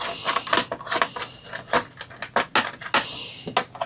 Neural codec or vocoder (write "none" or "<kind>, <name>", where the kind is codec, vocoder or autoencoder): none